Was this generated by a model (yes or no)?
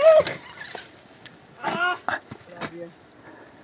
no